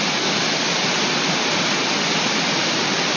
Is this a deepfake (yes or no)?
no